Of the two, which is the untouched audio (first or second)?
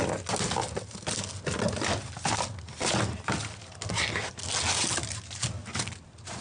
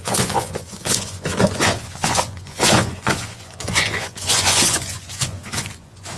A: first